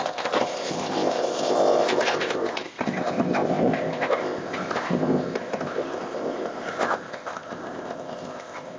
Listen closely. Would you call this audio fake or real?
fake